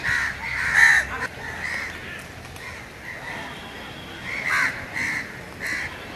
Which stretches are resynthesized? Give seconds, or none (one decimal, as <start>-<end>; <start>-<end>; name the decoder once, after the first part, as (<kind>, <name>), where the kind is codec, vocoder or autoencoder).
none

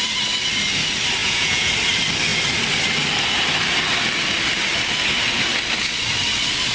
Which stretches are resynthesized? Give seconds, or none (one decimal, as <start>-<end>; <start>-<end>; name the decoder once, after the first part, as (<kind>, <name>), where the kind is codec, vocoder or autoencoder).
1.2-1.7 (vocoder, Vocos)